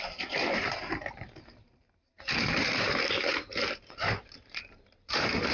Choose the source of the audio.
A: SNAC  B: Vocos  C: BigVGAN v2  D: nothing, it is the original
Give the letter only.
C